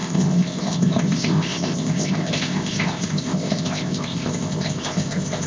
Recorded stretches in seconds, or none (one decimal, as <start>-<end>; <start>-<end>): none